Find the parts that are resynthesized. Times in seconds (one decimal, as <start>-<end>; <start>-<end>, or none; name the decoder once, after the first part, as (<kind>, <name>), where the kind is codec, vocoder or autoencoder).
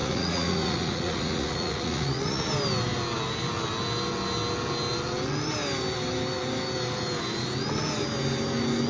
0.0-2.5 (vocoder, Vocos)